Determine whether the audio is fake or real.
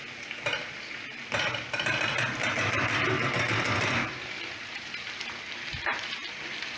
real